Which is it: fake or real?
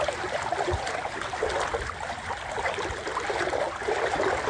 real